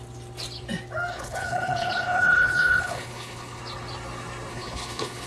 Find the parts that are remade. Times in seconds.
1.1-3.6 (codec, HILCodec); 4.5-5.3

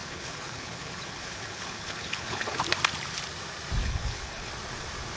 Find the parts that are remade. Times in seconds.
0.0-2.6 (codec, HILCodec); 3.8-4.5

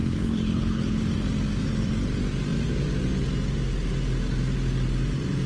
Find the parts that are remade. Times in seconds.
0.0-1.0 (codec, HILCodec)